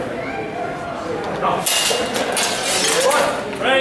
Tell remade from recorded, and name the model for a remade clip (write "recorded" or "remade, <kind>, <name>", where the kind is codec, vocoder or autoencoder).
recorded